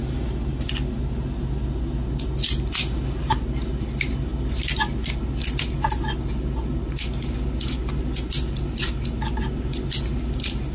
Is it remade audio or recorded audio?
recorded